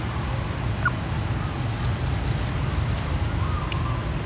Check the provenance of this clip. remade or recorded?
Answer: recorded